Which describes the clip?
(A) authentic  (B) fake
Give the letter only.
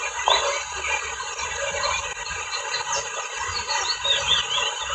A